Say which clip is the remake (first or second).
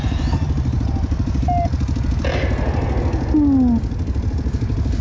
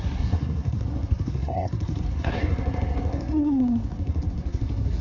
second